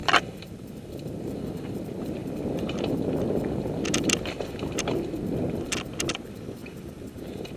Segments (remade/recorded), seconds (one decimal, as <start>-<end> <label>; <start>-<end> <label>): 0.0-6.6 recorded; 6.6-7.6 remade